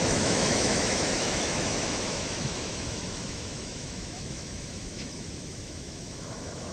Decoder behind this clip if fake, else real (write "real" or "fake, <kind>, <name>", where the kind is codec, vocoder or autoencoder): fake, autoencoder, DAC-VAE